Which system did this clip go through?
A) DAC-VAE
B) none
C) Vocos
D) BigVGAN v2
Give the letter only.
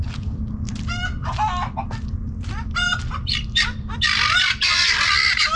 D